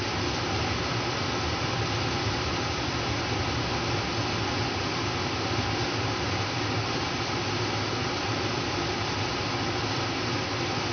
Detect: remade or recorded recorded